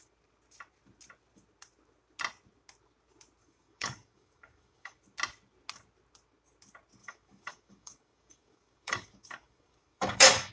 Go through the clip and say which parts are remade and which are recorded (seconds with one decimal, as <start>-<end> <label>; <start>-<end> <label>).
0.0-3.4 recorded; 3.4-5.0 remade; 5.0-7.0 recorded; 7.0-10.5 remade